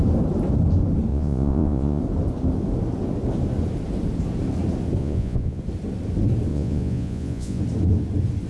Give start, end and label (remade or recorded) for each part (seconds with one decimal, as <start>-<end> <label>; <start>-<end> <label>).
0.0-1.1 recorded; 1.1-2.0 remade; 2.0-5.0 recorded; 5.0-5.6 remade; 5.6-6.5 recorded; 6.5-7.6 remade; 7.6-8.5 recorded